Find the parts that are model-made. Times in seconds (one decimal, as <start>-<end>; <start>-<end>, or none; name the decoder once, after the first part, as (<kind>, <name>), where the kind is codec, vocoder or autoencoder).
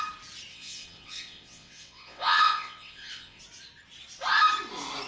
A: 0.5-3.4 (vocoder, WaveNeXt)